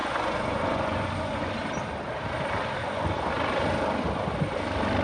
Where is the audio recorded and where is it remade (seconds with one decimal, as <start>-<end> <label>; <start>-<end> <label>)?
0.0-1.5 remade; 1.5-2.8 recorded; 2.8-3.3 remade; 3.3-5.0 recorded